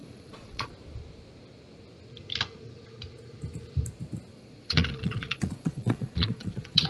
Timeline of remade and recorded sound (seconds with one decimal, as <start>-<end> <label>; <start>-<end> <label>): 0.0-0.7 remade; 0.7-4.3 recorded; 4.3-6.9 remade